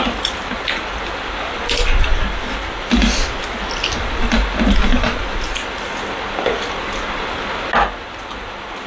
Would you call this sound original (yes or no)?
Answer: yes